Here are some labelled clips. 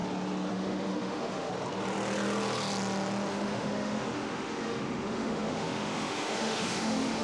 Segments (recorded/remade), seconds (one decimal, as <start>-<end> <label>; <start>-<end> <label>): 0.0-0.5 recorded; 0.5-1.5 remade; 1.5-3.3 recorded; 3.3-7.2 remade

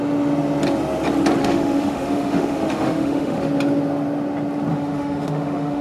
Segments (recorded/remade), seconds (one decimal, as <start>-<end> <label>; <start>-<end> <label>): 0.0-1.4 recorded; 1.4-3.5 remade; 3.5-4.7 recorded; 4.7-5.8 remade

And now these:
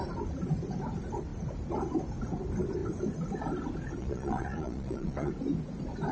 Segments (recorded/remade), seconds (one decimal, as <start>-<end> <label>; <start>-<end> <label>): 0.0-4.0 recorded; 4.0-5.3 remade; 5.3-6.1 recorded